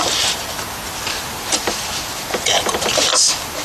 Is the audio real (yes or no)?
yes